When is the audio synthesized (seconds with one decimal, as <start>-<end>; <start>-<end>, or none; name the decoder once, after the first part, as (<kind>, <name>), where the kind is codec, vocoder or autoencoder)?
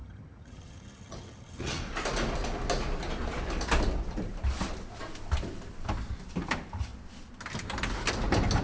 0.0-1.8 (vocoder, HiFi-GAN)